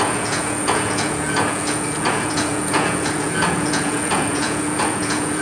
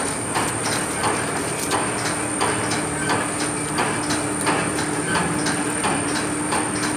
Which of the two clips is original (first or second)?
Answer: second